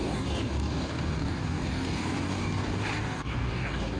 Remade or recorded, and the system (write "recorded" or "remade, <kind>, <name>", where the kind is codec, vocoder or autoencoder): remade, codec, DAC